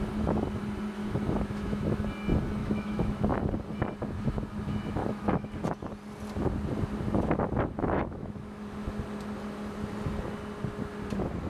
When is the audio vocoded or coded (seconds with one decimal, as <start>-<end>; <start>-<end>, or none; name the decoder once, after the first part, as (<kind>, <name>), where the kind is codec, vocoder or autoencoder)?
1.0-2.0 (autoencoder, DAC-VAE); 2.6-3.4; 5.0-5.5; 7.8-8.6